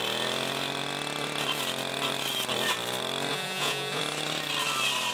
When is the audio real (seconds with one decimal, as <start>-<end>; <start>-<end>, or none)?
0.0-3.3; 4.0-5.1